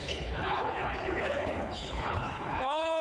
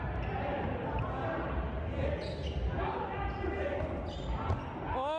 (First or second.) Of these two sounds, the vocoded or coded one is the first